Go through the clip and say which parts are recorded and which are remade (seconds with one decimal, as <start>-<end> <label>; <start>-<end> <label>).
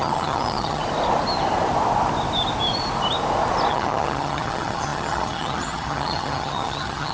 0.0-0.8 remade; 0.8-3.7 recorded; 3.7-7.1 remade